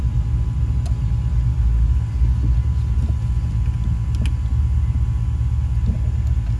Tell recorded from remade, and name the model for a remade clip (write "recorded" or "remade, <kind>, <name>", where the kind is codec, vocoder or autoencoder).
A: recorded